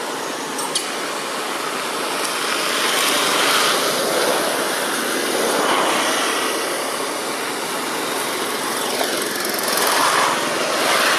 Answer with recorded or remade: recorded